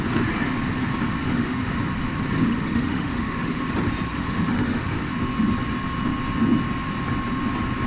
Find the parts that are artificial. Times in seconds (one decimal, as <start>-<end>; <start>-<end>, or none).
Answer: 1.2-1.8; 2.5-3.6; 4.1-5.1